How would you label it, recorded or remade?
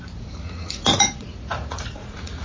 remade